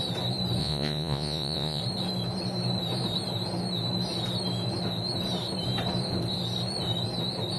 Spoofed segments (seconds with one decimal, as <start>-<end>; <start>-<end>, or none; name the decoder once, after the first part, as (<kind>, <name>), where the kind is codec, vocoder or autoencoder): 0.6-1.8 (vocoder, Vocos)